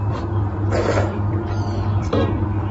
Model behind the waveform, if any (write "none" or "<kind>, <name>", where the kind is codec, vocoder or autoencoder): vocoder, BigVGAN v2